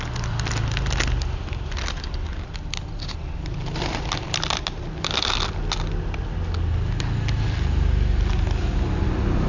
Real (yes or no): yes